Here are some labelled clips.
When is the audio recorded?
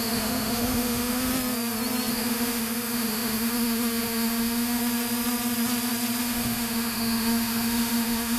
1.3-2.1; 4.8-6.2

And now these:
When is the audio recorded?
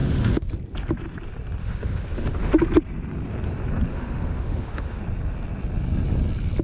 0.5-1.6; 2.6-3.9; 5.0-6.6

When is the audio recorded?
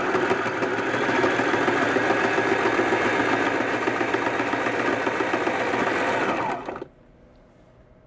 0.0-8.1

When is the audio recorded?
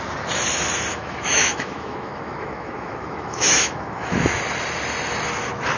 0.0-0.9; 4.4-5.8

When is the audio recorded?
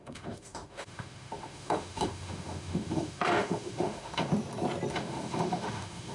4.3-4.9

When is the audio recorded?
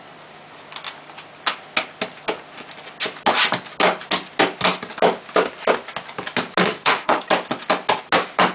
0.0-6.6; 7.2-8.5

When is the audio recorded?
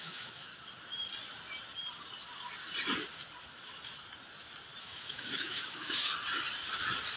0.5-4.8; 6.1-7.2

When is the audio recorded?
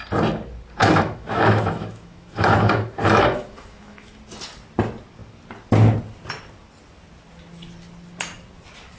0.0-0.8; 4.2-9.0